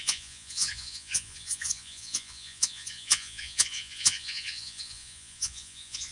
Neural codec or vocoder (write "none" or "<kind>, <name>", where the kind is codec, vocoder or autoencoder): vocoder, Vocos